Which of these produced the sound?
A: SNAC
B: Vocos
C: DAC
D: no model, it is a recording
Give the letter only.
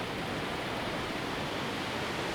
D